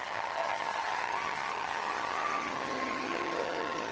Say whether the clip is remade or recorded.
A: remade